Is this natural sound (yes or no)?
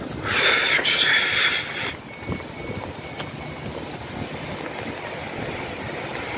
yes